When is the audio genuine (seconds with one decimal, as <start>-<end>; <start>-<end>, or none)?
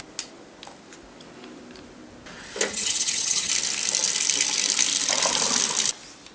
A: 0.0-2.7; 3.5-6.3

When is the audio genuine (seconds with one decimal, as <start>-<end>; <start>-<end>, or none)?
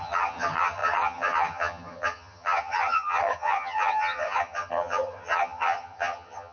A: none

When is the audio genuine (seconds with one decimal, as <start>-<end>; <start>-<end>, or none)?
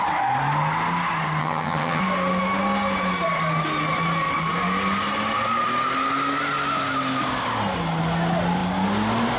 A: 0.0-1.4; 2.0-9.4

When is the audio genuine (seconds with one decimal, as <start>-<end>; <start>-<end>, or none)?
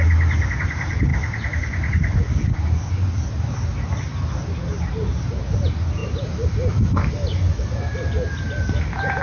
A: 0.0-9.2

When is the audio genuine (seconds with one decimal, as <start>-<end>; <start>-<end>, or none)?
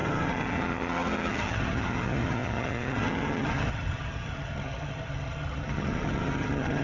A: none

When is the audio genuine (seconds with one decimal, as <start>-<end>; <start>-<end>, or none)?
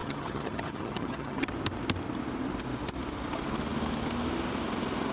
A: 1.5-5.1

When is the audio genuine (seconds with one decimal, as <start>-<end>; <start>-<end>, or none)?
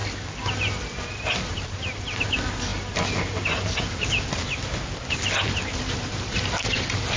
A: 0.0-7.2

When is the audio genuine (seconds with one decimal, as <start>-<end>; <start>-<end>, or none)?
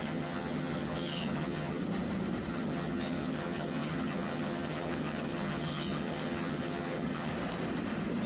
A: 1.8-2.5; 7.3-8.3